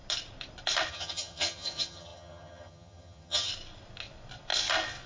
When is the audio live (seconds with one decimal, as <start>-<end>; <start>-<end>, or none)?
0.0-0.9; 3.5-5.1